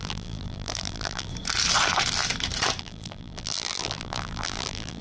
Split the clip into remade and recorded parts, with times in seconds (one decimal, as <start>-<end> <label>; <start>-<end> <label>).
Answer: 0.0-1.3 remade; 1.3-2.8 recorded; 2.8-5.0 remade